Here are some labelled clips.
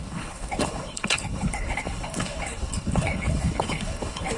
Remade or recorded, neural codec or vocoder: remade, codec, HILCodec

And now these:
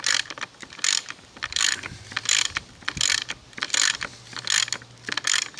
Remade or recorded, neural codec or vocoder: recorded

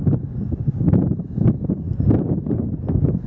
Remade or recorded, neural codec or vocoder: recorded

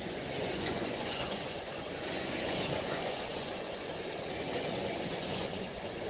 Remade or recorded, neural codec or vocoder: remade, vocoder, Vocos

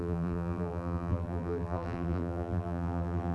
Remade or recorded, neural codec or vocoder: remade, vocoder, BigVGAN v2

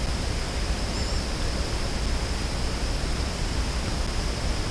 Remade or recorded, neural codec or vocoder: recorded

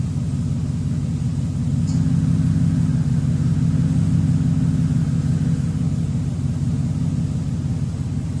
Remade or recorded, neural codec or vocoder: recorded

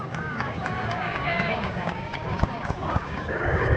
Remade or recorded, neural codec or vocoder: remade, codec, DAC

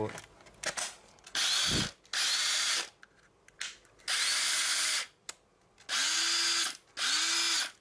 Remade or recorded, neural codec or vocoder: recorded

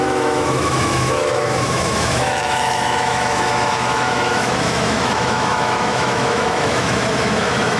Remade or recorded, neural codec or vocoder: remade, autoencoder, DAC-VAE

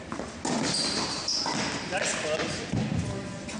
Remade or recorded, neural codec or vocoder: recorded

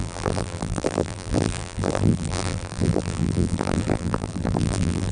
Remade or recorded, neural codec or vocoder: remade, vocoder, BigVGAN v2